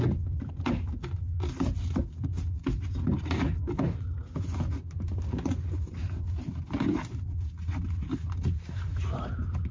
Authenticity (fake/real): real